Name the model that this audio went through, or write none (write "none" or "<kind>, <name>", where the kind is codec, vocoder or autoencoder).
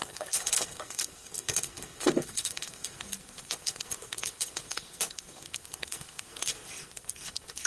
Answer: codec, SNAC